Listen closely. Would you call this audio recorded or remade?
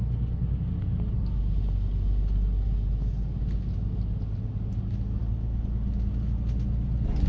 recorded